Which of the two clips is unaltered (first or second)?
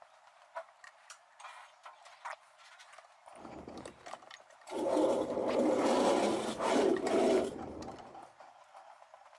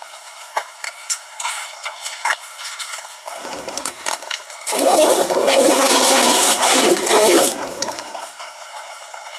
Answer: first